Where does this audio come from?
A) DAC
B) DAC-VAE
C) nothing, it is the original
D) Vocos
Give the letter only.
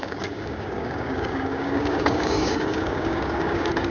A